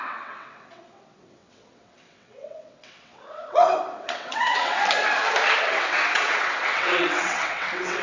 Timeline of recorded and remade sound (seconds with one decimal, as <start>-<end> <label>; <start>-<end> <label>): 0.0-4.8 remade; 4.8-5.6 recorded; 5.6-8.0 remade